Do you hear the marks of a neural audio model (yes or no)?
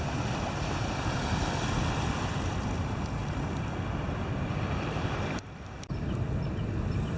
no